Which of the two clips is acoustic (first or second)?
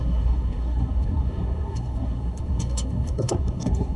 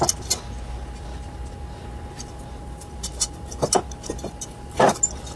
second